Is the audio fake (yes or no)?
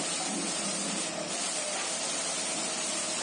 no